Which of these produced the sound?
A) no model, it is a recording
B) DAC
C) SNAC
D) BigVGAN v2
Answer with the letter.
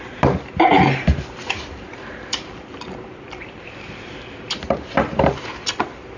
D